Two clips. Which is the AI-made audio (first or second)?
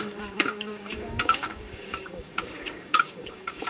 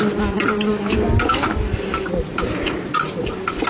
first